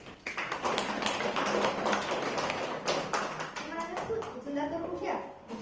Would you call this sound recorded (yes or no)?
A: yes